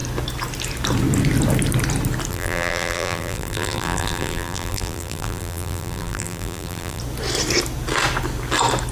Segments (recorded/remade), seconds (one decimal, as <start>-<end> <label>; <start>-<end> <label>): 0.0-2.3 recorded; 2.3-7.0 remade; 7.0-8.9 recorded